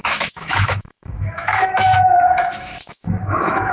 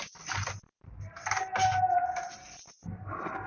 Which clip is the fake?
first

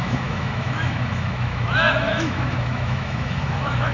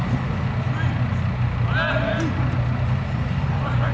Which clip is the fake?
first